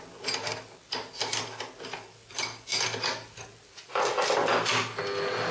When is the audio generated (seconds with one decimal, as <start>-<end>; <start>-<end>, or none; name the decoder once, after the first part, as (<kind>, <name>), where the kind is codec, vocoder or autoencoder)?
none

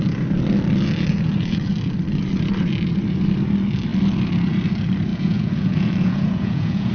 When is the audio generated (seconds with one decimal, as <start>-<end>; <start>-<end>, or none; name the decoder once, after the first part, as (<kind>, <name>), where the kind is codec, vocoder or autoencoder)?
5.1-6.9 (vocoder, Vocos)

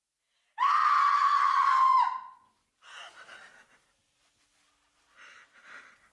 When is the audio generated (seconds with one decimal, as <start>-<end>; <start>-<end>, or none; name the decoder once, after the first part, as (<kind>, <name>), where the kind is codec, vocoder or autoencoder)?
0.8-2.7 (vocoder, Vocos)

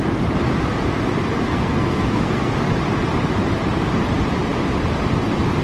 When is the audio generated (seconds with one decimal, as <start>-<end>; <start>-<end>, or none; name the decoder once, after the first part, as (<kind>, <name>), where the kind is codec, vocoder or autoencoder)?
1.5-2.5 (codec, SNAC)

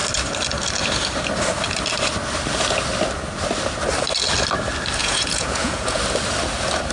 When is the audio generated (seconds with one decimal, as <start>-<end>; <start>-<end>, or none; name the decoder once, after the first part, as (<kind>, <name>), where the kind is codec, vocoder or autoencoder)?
5.0-6.0 (vocoder, Vocos)

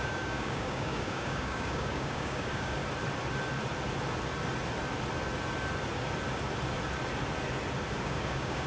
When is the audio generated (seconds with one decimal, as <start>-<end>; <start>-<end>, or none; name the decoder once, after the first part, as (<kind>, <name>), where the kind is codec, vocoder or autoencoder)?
0.0-2.8 (codec, DAC); 8.0-8.7